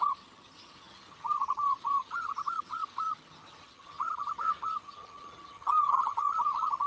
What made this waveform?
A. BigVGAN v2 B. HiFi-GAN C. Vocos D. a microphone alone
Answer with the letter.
B